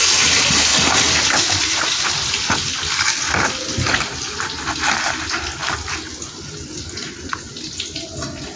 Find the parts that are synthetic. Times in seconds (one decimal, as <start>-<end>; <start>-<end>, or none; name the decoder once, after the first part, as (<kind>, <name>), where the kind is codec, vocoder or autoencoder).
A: none